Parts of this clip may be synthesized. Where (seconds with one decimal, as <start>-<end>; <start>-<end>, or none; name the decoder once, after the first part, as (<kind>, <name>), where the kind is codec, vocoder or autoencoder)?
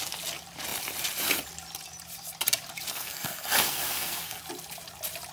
2.9-4.4 (codec, SNAC)